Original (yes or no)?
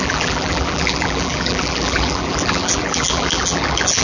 no